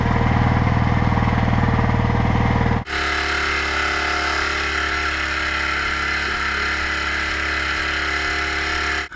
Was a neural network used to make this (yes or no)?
no